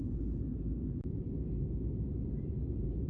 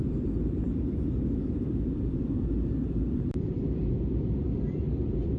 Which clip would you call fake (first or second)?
second